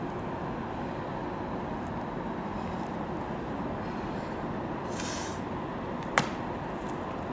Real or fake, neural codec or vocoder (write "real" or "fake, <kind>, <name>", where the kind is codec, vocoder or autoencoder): real